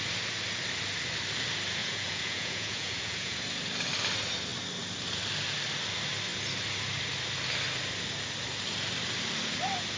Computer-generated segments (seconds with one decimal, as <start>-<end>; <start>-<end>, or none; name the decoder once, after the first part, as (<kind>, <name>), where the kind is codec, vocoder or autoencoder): 1.8-3.4 (vocoder, Vocos)